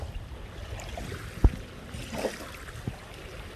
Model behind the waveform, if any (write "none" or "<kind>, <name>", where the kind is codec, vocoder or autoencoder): none